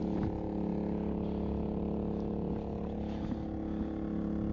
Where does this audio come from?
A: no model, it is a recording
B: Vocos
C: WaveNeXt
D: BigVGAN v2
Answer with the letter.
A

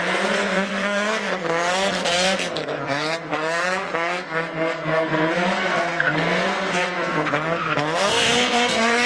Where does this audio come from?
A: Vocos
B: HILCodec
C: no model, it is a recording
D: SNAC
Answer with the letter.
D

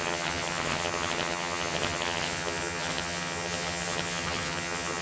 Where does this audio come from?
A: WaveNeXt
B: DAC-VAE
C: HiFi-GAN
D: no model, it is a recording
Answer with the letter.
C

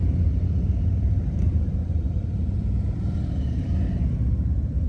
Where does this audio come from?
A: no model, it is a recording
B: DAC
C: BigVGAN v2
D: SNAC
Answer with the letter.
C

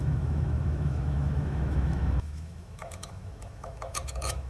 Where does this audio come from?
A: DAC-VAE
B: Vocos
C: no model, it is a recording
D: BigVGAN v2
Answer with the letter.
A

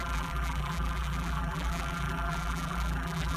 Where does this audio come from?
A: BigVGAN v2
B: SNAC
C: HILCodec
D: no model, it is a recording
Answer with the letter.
A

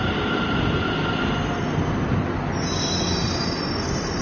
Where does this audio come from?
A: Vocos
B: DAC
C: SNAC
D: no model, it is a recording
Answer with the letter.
D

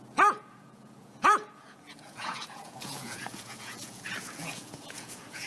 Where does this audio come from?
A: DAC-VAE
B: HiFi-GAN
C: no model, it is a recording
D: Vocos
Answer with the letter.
D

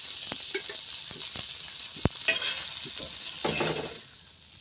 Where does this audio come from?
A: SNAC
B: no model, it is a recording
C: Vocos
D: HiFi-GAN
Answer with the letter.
B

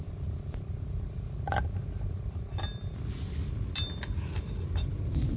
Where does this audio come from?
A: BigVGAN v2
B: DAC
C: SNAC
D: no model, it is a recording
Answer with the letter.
D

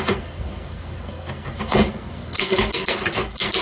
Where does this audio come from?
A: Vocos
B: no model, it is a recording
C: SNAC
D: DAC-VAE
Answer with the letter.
C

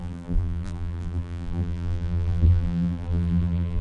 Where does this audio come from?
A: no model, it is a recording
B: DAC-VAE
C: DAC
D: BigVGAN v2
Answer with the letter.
D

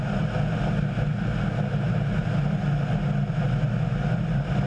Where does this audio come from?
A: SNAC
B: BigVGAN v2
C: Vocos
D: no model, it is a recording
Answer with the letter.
D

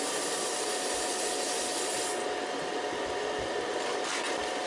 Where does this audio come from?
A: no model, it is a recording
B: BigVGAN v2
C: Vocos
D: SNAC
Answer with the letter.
A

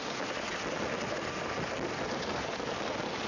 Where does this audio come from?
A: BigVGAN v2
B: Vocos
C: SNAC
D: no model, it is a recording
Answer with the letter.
D